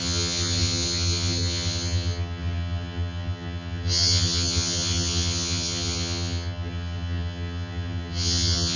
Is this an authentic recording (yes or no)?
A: no